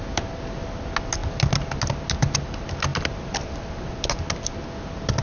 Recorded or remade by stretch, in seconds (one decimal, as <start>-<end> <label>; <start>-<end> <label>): 0.0-5.2 recorded